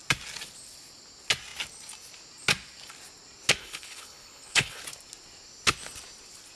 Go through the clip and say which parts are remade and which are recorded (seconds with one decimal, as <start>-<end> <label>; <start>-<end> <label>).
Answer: 0.0-3.6 recorded; 3.6-4.8 remade; 4.8-6.6 recorded